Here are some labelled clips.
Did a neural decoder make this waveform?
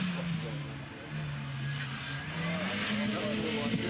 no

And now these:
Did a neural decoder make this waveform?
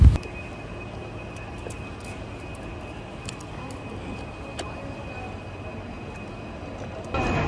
no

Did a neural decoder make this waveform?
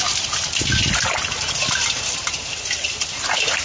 no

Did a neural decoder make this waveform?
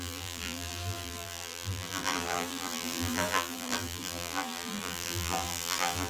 yes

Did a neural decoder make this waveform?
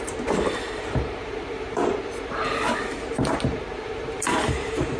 yes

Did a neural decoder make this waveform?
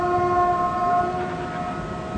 no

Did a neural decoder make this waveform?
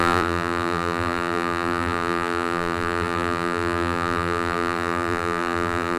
yes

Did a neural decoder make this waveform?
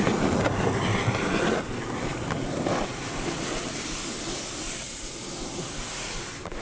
no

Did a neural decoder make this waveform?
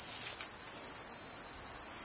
no